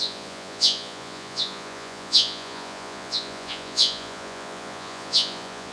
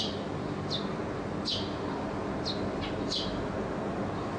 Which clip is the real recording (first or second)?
second